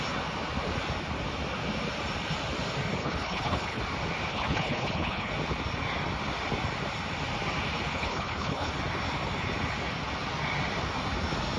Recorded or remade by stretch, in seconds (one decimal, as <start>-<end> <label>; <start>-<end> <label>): 0.0-3.0 recorded; 3.0-3.8 remade; 3.8-4.3 recorded; 4.3-5.3 remade; 5.3-7.9 recorded; 7.9-8.7 remade; 8.7-11.6 recorded